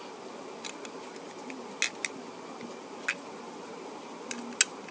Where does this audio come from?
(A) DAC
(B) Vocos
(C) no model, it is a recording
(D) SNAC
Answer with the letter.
C